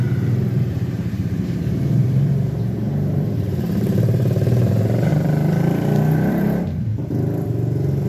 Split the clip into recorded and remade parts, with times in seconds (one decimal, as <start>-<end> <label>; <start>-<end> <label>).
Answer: 0.0-5.1 remade; 5.1-6.3 recorded; 6.3-6.9 remade; 6.9-8.1 recorded